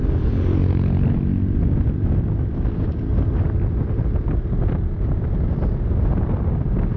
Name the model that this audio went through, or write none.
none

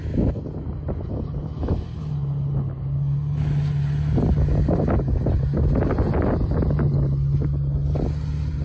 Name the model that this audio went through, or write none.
none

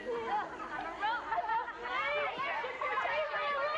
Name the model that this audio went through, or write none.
none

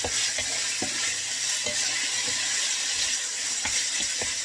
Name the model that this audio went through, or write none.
none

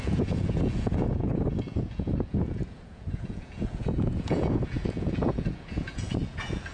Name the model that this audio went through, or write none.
vocoder, Vocos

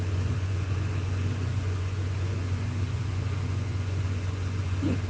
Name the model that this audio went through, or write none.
vocoder, Vocos